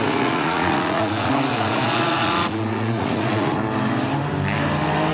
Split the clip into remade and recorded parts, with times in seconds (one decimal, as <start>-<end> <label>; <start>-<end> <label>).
0.0-3.6 remade; 3.6-5.1 recorded